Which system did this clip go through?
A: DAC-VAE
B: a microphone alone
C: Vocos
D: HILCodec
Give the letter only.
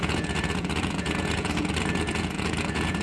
C